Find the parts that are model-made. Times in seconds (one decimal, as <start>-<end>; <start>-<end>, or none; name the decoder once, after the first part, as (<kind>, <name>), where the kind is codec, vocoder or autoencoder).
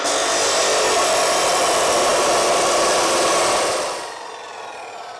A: none